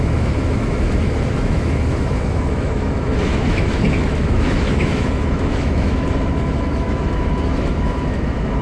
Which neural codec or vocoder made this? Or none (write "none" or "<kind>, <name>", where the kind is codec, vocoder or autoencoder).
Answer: autoencoder, DAC-VAE